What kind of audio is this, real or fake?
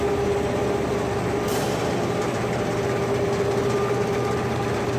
real